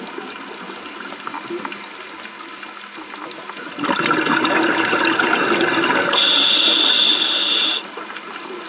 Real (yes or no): yes